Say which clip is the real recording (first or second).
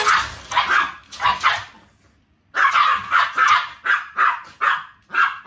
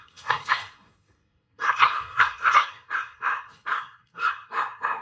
first